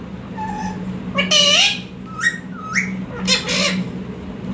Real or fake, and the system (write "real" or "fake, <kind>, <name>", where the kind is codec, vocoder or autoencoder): real